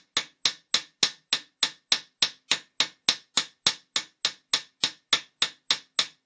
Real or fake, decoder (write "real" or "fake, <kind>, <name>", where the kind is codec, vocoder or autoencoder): real